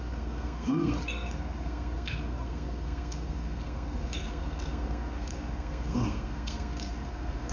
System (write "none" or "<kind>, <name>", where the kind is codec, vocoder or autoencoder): codec, SNAC